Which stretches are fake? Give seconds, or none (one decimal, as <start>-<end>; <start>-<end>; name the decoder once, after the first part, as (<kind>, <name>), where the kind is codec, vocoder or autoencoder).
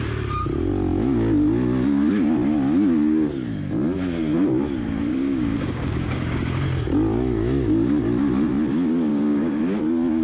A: 5.1-6.4 (codec, DAC); 9.1-9.6